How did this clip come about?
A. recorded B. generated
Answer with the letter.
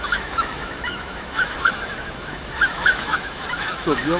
B